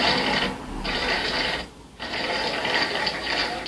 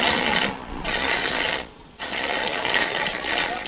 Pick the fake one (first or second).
second